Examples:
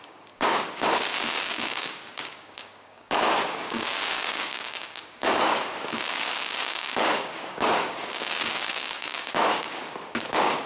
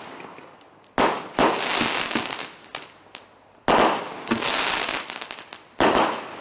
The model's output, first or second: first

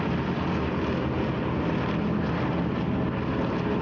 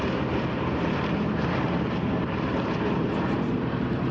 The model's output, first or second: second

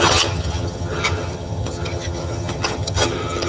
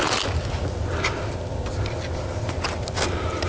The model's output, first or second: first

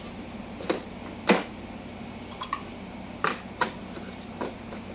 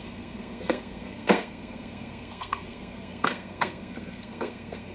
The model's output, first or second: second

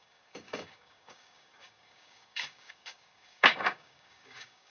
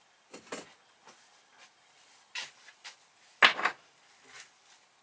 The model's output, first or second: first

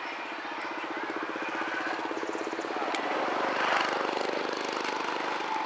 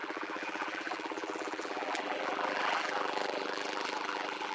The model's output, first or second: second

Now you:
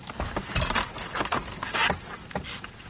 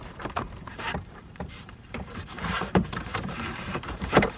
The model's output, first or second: second